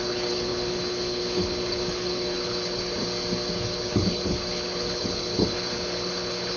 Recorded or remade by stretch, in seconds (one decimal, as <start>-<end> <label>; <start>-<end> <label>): 0.0-3.0 remade; 3.0-3.5 recorded; 3.5-6.6 remade

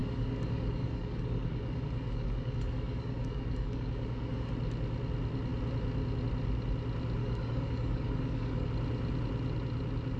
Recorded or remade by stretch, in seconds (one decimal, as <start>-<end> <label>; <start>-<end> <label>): 0.0-4.5 remade; 4.5-7.2 recorded; 7.2-8.7 remade; 8.7-10.2 recorded

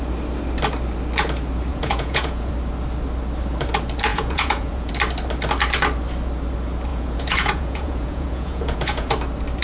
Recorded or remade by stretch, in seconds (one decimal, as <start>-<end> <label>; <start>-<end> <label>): 0.0-1.7 recorded; 1.7-2.5 remade; 2.5-4.1 recorded; 4.1-4.9 remade; 4.9-6.9 recorded; 6.9-9.1 remade; 9.1-9.6 recorded

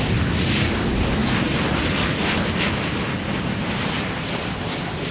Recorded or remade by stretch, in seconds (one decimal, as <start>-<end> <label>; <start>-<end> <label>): 0.0-5.1 recorded

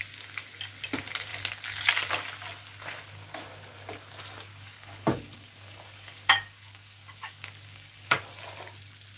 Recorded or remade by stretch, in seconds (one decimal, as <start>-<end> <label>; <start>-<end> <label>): 0.0-4.5 recorded; 4.5-8.2 remade; 8.2-9.2 recorded

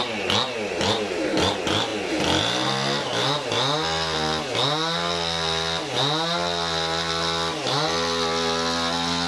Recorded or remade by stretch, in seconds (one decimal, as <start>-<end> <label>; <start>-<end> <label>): 0.0-9.3 recorded